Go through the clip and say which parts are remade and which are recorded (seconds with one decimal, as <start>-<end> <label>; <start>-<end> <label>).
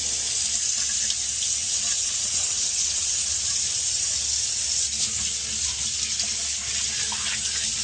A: 0.0-1.6 recorded; 1.6-3.2 remade; 3.2-7.8 recorded